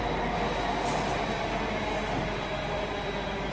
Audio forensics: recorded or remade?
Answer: recorded